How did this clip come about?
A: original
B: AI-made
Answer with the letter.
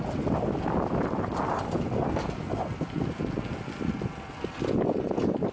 A